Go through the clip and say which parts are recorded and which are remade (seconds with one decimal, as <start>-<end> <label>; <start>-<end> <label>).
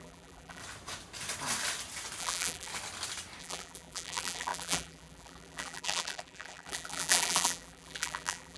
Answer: 0.0-0.6 remade; 0.6-2.2 recorded; 2.2-2.7 remade; 2.7-3.4 recorded; 3.4-8.6 remade